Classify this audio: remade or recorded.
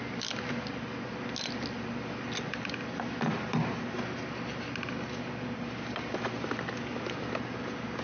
recorded